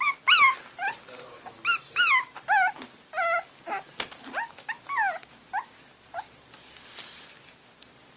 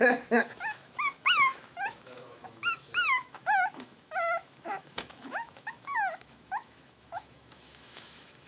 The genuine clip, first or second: first